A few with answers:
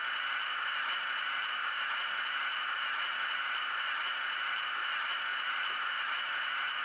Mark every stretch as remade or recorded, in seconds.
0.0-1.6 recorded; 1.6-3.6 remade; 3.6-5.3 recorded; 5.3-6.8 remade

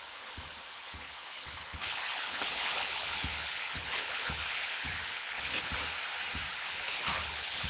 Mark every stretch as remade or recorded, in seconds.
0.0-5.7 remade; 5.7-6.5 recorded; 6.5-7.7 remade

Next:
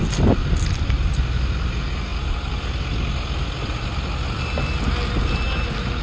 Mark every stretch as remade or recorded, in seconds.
0.0-6.0 recorded